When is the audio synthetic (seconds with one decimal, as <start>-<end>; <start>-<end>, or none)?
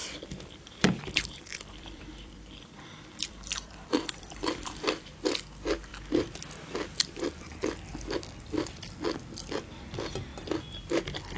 0.0-4.8